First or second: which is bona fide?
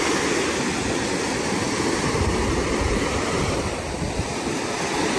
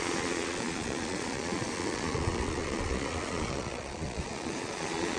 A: first